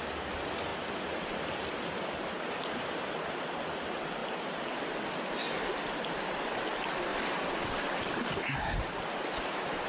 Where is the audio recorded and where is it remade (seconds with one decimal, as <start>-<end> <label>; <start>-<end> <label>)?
0.0-9.9 recorded